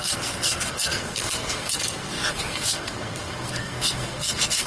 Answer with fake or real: fake